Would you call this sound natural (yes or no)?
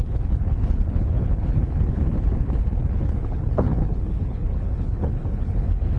no